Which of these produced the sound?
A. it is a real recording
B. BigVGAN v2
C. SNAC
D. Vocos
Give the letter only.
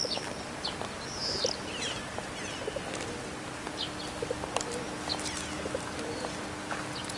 A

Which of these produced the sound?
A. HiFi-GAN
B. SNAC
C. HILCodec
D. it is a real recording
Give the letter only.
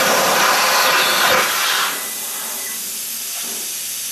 D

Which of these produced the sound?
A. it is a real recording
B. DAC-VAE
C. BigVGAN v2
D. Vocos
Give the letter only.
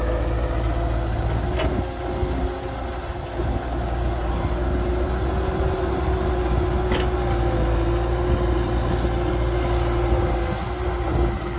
A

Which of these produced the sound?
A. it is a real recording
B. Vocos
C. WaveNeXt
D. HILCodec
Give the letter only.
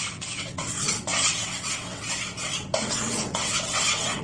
C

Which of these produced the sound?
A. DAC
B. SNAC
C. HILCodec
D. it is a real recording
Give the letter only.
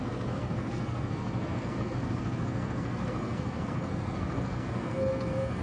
B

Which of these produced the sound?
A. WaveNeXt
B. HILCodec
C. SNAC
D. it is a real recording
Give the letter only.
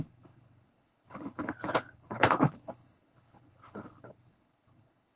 B